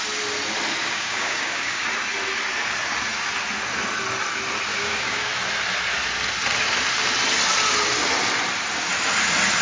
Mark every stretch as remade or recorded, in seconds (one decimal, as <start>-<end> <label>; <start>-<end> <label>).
0.0-0.8 recorded; 0.8-1.8 remade; 1.8-4.7 recorded; 4.7-5.3 remade; 5.3-9.6 recorded